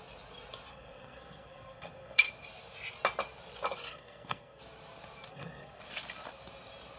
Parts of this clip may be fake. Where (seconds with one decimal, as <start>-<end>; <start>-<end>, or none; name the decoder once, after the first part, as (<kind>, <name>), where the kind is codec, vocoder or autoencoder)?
0.7-2.3 (codec, SNAC); 3.9-4.6; 5.3-5.8